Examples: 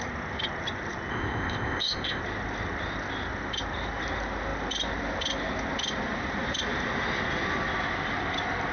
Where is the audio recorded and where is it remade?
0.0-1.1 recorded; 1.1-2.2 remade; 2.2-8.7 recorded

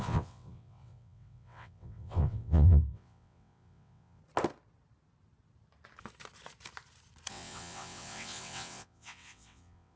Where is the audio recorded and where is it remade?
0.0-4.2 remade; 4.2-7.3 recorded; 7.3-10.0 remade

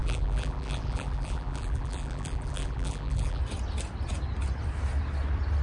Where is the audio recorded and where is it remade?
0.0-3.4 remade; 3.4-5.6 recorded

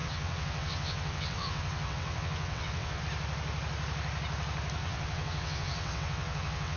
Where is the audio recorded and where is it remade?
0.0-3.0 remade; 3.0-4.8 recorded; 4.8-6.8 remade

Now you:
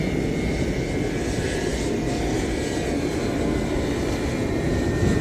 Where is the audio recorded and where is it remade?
0.0-5.2 recorded